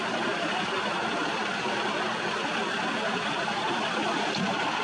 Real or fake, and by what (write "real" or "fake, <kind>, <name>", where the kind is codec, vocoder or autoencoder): fake, vocoder, BigVGAN v2